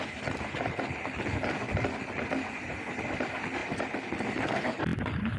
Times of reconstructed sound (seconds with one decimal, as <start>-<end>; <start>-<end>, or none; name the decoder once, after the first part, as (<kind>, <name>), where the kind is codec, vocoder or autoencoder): none